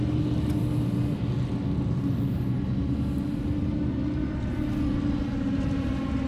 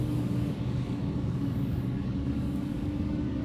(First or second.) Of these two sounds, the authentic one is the first